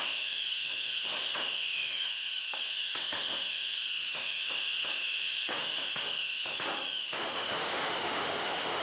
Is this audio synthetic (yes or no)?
yes